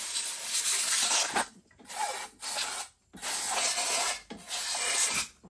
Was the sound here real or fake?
real